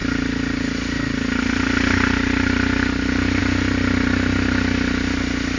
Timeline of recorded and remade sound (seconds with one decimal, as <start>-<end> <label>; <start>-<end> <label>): 0.0-5.6 recorded